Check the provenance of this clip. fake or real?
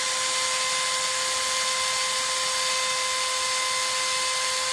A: real